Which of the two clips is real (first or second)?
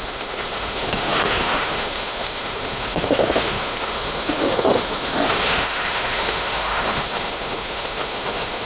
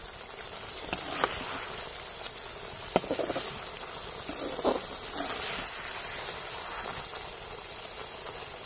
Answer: second